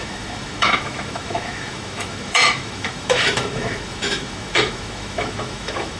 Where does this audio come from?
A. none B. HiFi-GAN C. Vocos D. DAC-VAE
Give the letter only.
D